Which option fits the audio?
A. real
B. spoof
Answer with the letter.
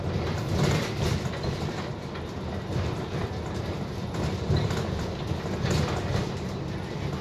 A